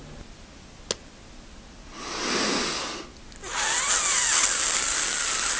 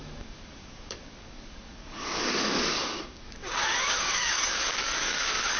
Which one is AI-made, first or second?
second